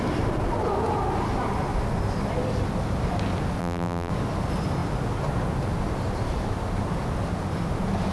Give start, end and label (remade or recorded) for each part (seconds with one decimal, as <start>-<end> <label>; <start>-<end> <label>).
0.0-3.6 recorded; 3.6-4.1 remade; 4.1-8.1 recorded